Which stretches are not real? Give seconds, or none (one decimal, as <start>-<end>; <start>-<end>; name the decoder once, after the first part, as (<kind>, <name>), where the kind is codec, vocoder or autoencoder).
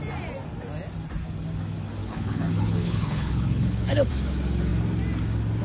2.0-4.1 (codec, HILCodec)